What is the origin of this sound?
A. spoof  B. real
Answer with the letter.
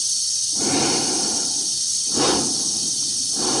B